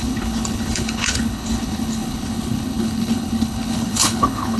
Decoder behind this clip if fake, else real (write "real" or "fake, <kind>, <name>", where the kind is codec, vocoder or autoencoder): fake, codec, HILCodec